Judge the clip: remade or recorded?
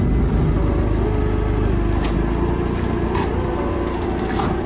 recorded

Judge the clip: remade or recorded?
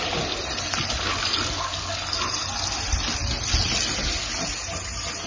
recorded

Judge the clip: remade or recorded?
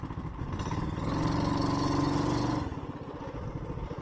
recorded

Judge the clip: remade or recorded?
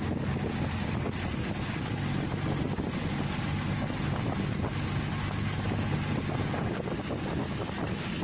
recorded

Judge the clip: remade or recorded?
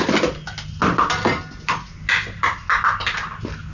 recorded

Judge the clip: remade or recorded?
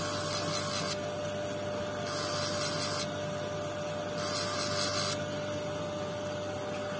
recorded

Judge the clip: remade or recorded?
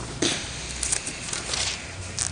recorded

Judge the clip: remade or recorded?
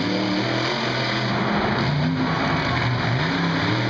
recorded